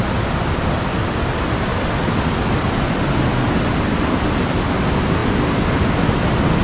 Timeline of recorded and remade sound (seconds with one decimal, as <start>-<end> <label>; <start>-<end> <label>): 0.0-6.6 recorded